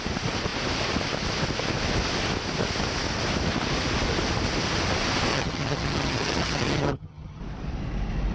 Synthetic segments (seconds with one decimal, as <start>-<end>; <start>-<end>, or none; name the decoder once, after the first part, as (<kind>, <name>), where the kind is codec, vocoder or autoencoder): 5.3-7.4 (vocoder, HiFi-GAN)